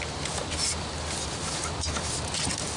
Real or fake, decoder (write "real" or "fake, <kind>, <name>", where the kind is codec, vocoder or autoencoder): real